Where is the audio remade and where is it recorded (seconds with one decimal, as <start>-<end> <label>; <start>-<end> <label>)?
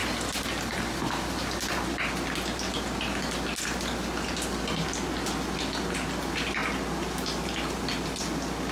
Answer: 0.0-8.7 recorded